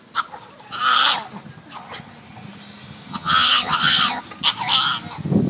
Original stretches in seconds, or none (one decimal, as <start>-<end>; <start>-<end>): 0.0-3.1; 4.2-5.5